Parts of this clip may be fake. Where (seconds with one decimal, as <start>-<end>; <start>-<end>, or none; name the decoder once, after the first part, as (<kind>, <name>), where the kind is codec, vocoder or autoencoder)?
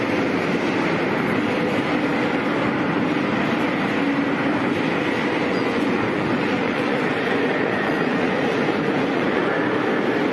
5.5-9.5 (vocoder, Vocos)